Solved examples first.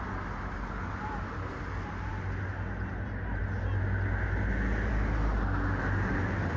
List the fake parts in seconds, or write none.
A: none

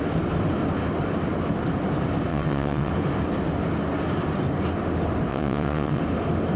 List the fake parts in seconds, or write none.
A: 2.3-2.9 (vocoder, WaveNeXt); 5.3-6.0

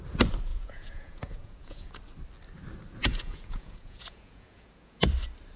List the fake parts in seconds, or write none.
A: 0.5-1.9 (vocoder, Vocos); 3.0-5.0

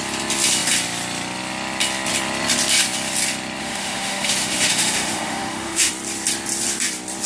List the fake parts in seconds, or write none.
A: 3.6-5.9 (autoencoder, DAC-VAE)

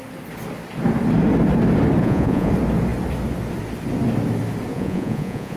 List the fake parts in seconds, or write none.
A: 2.0-2.5 (vocoder, Vocos); 4.7-5.6

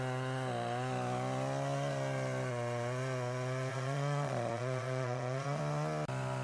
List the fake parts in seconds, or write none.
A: 3.7-5.6 (vocoder, Vocos)